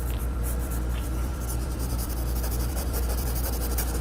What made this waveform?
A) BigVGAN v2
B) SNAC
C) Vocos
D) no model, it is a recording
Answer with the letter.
A